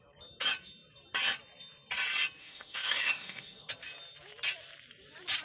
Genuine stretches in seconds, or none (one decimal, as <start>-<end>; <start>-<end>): 0.0-2.4; 3.7-5.4